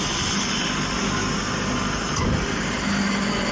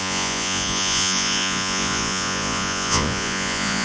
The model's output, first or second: second